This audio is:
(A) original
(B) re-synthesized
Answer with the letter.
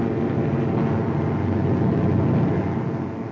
A